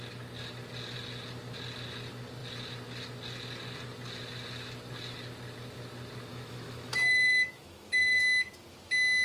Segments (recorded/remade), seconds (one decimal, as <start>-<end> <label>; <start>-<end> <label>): 0.0-6.3 recorded; 6.3-8.2 remade; 8.2-9.2 recorded